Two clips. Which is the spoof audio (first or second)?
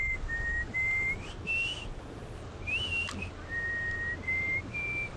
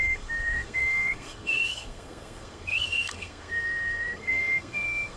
second